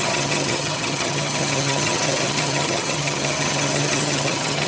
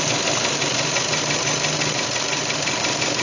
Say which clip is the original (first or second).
second